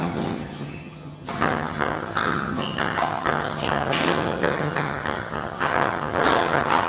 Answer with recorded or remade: remade